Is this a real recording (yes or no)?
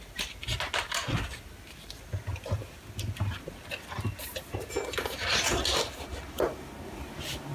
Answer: yes